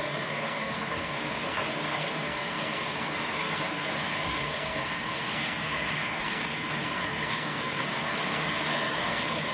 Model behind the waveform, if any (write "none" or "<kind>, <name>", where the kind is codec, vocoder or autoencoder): codec, SNAC